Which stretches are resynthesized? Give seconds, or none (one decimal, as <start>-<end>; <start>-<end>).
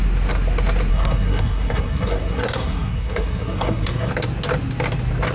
0.9-4.1